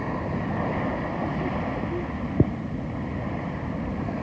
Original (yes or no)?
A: yes